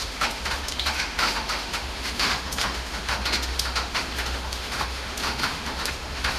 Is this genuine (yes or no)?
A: no